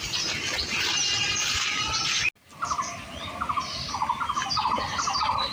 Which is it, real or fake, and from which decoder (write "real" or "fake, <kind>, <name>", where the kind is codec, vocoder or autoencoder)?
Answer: real